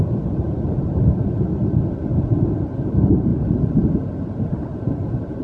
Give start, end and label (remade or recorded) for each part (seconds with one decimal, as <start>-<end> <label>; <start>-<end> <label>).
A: 0.0-1.5 remade; 1.5-2.9 recorded; 2.9-3.3 remade; 3.3-4.4 recorded; 4.4-5.4 remade

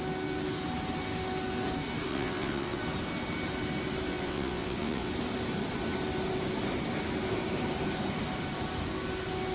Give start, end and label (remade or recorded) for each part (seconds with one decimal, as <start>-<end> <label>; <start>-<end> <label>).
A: 0.0-2.1 recorded; 2.1-2.8 remade; 2.8-4.1 recorded; 4.1-5.1 remade; 5.1-9.5 recorded

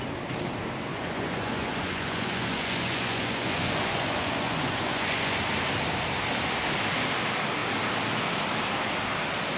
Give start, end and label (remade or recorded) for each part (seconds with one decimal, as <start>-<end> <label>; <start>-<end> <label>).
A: 0.0-0.9 recorded; 0.9-5.4 remade; 5.4-9.6 recorded

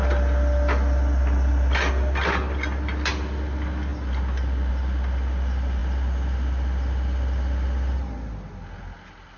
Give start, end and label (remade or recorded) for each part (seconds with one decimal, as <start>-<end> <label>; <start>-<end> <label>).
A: 0.0-9.4 recorded

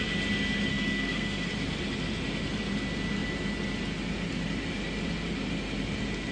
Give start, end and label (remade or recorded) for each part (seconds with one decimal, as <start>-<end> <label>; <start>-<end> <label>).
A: 0.0-0.7 recorded; 0.7-1.5 remade; 1.5-6.3 recorded

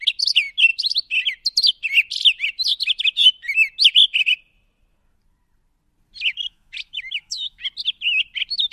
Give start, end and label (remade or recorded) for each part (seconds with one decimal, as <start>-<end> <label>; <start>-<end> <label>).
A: 0.0-6.3 recorded; 6.3-7.6 remade; 7.6-8.7 recorded

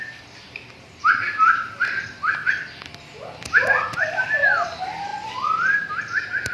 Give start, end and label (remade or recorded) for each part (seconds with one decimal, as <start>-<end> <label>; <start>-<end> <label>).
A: 0.0-6.5 recorded